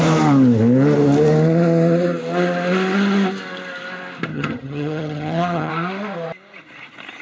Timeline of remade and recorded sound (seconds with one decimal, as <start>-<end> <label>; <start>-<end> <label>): 0.0-4.3 recorded; 4.3-5.7 remade; 5.7-7.2 recorded